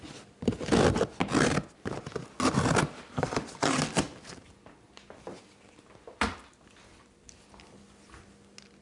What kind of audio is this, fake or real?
real